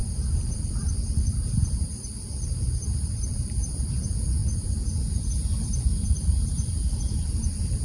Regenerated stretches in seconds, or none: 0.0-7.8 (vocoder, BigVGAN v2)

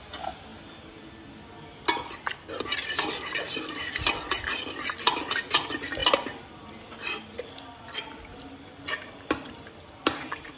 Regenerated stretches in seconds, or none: 6.0-8.2 (vocoder, BigVGAN v2)

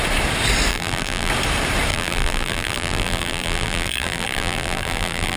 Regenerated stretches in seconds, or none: 0.7-1.3 (vocoder, BigVGAN v2); 1.9-5.4

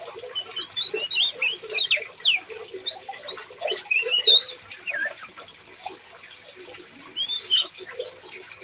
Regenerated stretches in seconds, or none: 2.8-4.9 (vocoder, BigVGAN v2)

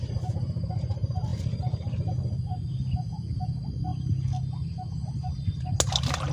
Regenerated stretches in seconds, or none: none

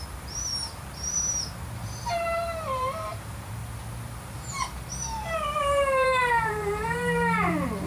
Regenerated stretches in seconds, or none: 0.0-3.6 (vocoder, BigVGAN v2); 4.2-7.9